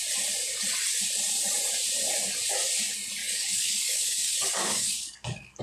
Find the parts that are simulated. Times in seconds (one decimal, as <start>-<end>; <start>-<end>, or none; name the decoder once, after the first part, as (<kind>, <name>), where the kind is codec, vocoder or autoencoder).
3.2-5.6 (codec, DAC)